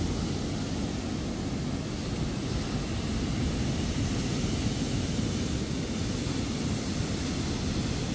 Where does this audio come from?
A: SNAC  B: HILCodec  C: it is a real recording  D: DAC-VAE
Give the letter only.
C